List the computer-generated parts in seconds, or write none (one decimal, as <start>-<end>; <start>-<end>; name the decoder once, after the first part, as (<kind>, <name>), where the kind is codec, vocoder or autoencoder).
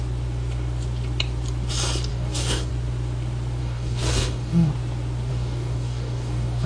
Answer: 2.1-2.7 (codec, DAC); 3.6-4.7; 5.3-6.7